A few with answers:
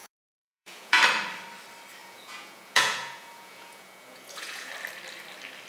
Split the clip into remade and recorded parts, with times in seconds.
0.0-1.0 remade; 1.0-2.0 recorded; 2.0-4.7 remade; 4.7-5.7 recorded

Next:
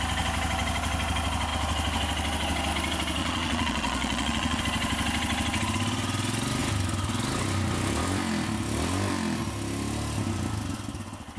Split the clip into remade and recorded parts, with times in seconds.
0.0-3.2 recorded; 3.2-4.6 remade; 4.6-11.4 recorded

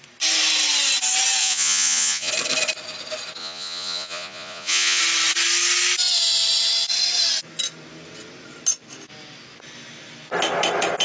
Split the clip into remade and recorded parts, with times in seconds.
0.0-1.4 recorded; 1.4-2.3 remade; 2.3-3.4 recorded; 3.4-5.0 remade; 5.0-11.0 recorded